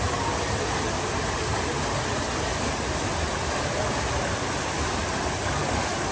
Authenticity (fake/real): real